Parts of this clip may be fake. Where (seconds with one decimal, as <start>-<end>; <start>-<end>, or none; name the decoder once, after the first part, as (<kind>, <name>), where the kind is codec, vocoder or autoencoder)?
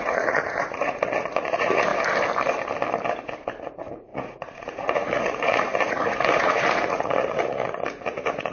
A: 0.0-1.9 (vocoder, Vocos); 3.6-8.5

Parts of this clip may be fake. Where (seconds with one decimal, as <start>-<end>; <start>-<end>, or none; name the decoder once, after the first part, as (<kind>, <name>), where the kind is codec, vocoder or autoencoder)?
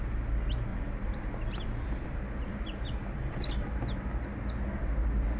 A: 0.7-3.8 (vocoder, BigVGAN v2)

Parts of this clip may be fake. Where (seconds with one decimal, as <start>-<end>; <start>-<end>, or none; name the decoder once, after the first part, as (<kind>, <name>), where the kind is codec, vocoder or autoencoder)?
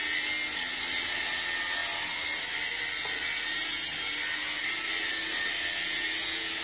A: none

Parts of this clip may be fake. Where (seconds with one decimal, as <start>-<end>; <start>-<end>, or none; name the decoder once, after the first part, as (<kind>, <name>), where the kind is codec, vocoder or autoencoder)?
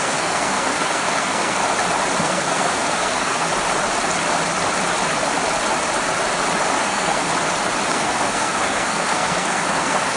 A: 0.0-1.6 (codec, SNAC); 2.2-3.5; 6.8-7.3; 7.9-10.2